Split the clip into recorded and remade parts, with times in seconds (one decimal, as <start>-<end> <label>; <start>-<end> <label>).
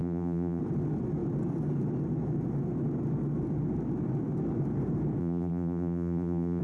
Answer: 0.0-0.6 remade; 0.6-5.2 recorded; 5.2-6.6 remade